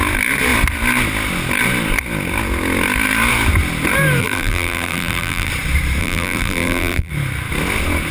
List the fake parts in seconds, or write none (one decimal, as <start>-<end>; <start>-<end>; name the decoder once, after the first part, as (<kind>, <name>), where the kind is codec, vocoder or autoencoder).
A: 4.2-5.5 (vocoder, BigVGAN v2); 6.0-7.1